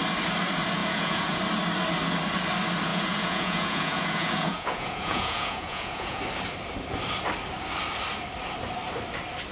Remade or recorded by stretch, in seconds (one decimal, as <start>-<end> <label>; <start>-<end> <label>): 0.0-0.8 recorded; 0.8-1.4 remade; 1.4-2.9 recorded; 2.9-6.2 remade; 6.2-9.5 recorded